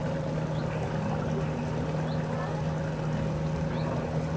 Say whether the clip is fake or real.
real